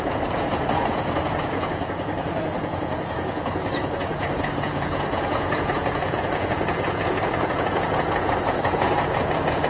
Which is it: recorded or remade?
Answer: remade